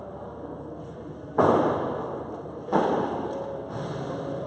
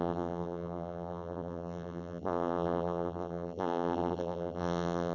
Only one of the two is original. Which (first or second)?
first